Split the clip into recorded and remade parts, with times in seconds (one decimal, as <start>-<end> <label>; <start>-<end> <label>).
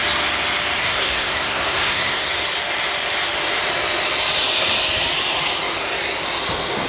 0.0-0.8 recorded; 0.8-2.3 remade; 2.3-6.9 recorded